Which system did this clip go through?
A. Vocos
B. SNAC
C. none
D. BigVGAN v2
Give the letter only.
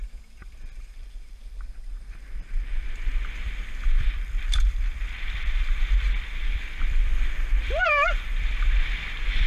D